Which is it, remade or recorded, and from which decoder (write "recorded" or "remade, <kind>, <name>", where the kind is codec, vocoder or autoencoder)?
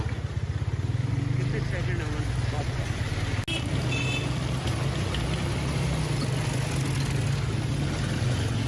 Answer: recorded